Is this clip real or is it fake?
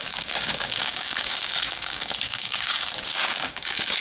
fake